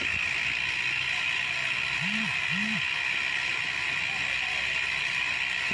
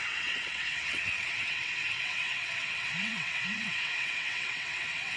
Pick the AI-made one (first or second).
second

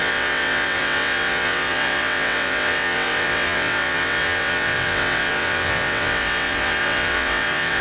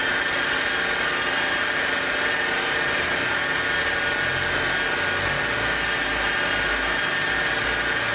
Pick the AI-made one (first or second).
first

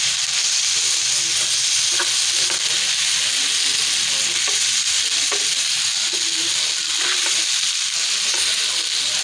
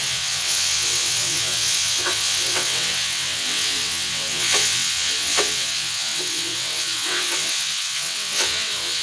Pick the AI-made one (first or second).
second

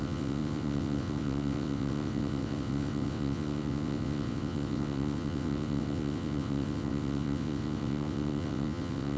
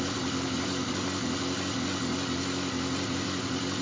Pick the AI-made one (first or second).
first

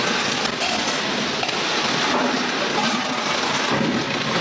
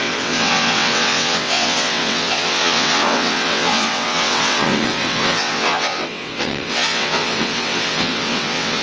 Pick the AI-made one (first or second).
second